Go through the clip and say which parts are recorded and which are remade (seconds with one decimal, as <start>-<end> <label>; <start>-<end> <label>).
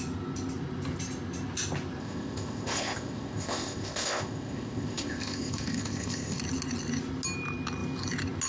0.0-2.0 recorded; 2.0-6.4 remade; 6.4-8.5 recorded